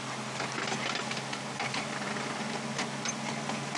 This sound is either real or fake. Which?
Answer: real